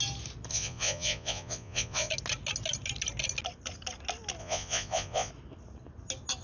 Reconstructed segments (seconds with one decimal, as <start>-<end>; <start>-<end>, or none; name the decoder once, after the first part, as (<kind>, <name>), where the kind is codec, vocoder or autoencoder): 0.5-2.1 (vocoder, Vocos); 4.4-5.3